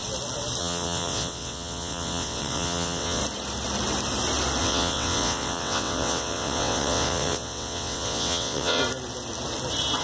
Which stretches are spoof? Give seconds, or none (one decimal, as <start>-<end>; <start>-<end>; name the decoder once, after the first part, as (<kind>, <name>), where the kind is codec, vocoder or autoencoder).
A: 0.6-3.2 (vocoder, WaveNeXt); 4.6-8.8